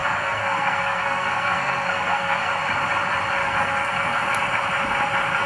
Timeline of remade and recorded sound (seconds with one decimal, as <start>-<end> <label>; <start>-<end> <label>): 0.0-2.5 remade; 2.5-3.4 recorded; 3.4-4.2 remade; 4.2-5.5 recorded